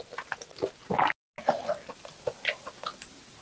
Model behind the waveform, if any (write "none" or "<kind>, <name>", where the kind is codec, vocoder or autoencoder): none